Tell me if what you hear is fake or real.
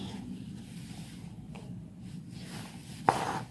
fake